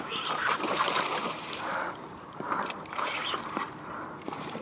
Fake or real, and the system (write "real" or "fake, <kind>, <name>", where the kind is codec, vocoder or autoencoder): fake, vocoder, BigVGAN v2